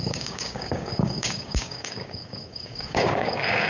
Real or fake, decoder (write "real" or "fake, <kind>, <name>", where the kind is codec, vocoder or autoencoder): fake, codec, DAC